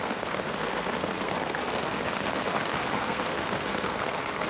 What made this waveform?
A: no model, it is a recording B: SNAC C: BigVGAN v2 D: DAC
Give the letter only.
B